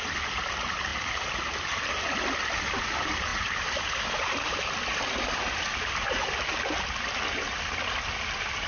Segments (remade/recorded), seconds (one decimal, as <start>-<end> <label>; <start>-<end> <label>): 0.0-8.7 recorded